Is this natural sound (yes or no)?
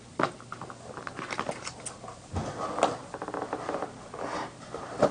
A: yes